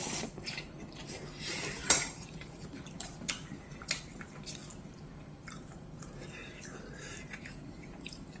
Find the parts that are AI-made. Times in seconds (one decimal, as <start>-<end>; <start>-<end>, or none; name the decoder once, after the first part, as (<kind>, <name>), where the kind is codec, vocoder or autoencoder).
1.4-4.6 (vocoder, BigVGAN v2); 5.4-8.4